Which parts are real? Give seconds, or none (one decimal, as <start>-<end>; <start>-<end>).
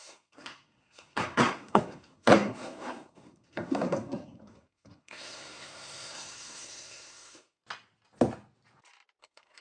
7.6-9.2